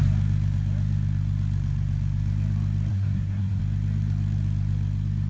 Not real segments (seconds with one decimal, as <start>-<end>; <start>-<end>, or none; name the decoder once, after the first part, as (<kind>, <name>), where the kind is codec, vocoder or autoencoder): 2.9-3.6 (codec, SNAC)